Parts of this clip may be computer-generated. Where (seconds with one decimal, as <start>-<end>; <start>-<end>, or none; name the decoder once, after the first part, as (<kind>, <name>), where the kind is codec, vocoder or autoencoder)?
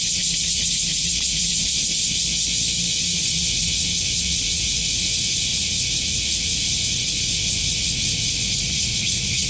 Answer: 0.0-2.2 (vocoder, Vocos); 3.0-9.5